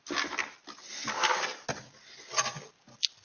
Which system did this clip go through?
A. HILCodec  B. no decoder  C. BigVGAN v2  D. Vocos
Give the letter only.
B